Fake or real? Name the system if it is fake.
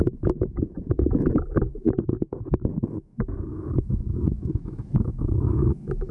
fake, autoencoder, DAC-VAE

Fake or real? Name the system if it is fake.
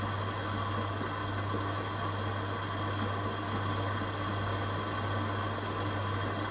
real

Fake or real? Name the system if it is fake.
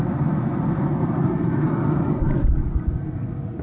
real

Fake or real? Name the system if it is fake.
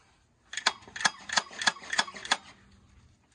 real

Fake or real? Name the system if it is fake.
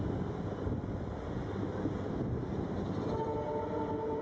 real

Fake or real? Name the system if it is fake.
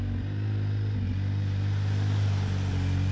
real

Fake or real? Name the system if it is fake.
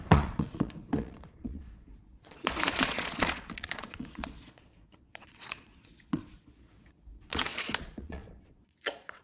fake, vocoder, Vocos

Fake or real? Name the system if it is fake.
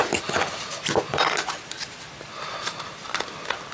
real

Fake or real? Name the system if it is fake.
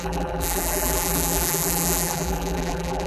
fake, vocoder, BigVGAN v2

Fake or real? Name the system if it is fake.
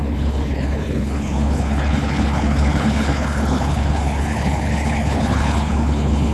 fake, codec, HILCodec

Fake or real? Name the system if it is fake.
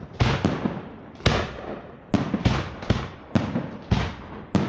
real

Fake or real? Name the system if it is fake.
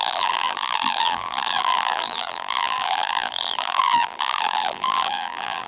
fake, vocoder, BigVGAN v2